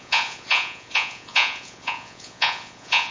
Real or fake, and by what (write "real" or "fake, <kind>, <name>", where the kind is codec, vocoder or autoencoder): fake, vocoder, Vocos